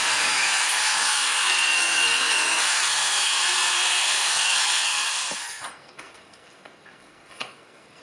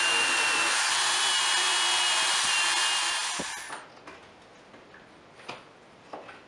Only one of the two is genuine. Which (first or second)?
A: second